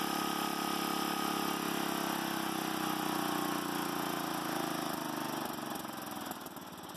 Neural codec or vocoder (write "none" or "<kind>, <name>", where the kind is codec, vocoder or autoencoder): none